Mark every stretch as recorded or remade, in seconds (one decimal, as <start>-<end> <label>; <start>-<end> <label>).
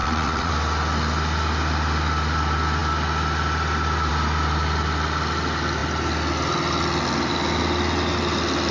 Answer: 0.0-0.5 remade; 0.5-8.7 recorded